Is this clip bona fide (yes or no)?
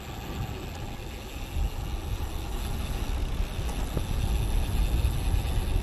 yes